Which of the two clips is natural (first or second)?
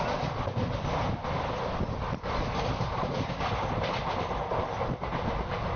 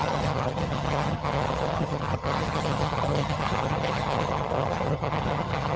first